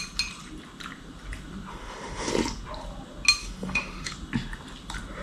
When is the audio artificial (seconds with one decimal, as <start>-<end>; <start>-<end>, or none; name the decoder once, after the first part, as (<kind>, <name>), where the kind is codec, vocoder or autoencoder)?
1.7-2.3 (autoencoder, DAC-VAE); 3.4-4.1